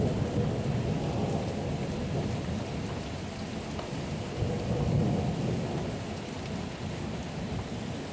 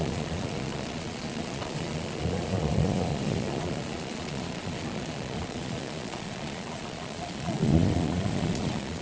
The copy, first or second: second